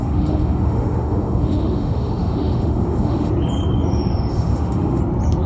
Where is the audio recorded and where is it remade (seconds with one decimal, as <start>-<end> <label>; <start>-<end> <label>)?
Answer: 0.0-3.3 remade; 3.3-4.3 recorded; 4.3-5.0 remade; 5.0-5.5 recorded